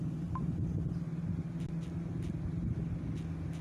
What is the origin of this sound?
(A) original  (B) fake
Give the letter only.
A